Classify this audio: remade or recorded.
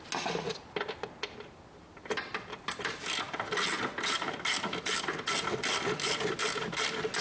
recorded